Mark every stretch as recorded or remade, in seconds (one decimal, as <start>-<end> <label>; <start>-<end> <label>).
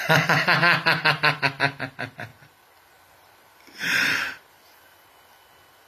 0.0-2.3 recorded; 2.3-5.1 remade; 5.1-5.9 recorded